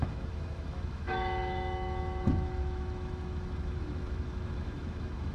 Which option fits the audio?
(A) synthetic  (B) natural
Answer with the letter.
A